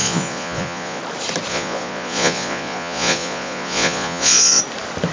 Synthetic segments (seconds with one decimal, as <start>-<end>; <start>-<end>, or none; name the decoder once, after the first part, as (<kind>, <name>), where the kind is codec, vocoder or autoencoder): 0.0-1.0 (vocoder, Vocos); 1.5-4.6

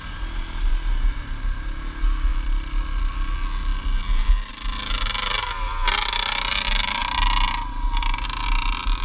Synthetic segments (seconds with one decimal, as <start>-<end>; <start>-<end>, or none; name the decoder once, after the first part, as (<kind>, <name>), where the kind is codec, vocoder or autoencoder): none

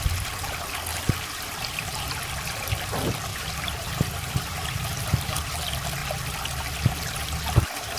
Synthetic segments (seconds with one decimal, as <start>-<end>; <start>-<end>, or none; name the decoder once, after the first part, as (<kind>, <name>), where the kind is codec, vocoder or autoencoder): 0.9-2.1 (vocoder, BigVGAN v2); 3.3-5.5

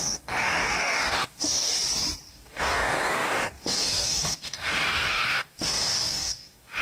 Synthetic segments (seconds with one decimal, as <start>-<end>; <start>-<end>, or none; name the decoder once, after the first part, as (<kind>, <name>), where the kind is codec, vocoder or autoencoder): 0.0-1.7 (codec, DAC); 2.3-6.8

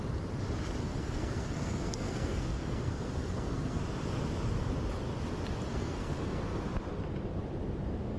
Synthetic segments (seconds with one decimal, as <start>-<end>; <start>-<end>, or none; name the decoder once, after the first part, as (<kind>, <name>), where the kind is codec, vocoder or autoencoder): 0.8-3.8 (codec, SNAC); 5.7-6.4

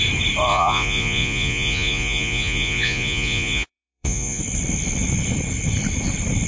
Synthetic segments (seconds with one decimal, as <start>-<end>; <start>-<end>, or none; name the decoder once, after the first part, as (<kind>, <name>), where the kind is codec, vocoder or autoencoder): 0.5-4.4 (vocoder, Vocos)

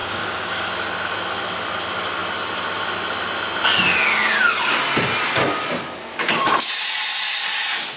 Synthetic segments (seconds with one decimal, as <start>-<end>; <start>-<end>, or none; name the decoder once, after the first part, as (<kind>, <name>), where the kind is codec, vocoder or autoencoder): 0.0-0.7 (codec, DAC); 6.1-6.7